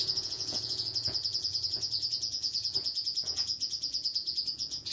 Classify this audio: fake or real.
fake